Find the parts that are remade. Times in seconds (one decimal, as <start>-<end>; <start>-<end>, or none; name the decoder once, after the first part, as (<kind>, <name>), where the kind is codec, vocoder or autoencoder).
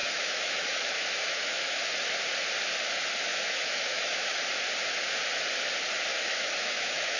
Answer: 0.0-1.8 (autoencoder, DAC-VAE); 3.3-4.4; 6.1-7.2